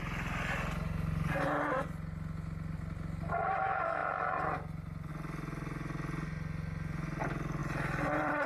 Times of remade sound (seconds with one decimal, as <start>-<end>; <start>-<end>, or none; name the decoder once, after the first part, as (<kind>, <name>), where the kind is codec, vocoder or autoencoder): 7.6-8.5 (vocoder, BigVGAN v2)